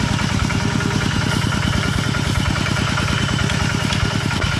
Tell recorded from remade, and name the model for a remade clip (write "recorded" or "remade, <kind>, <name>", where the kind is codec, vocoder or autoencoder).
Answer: recorded